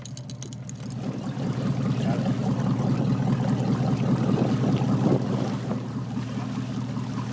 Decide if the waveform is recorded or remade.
recorded